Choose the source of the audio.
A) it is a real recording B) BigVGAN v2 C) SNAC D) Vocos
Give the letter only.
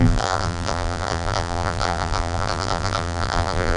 B